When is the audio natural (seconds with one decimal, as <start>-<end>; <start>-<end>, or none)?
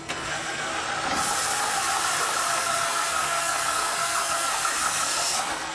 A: 0.7-2.5